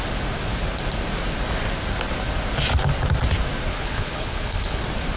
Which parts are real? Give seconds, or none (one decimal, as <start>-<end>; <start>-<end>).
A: 0.0-3.7; 4.8-5.2